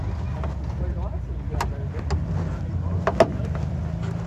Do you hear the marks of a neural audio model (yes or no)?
no